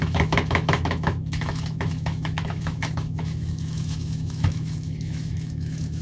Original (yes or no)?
no